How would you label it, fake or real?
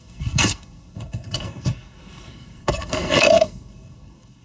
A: fake